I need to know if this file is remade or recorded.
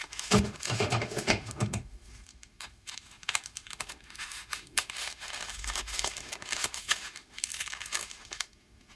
remade